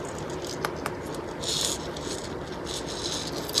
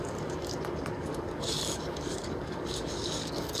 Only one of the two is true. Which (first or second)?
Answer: first